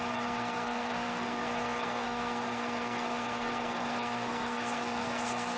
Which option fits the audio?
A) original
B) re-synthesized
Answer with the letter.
B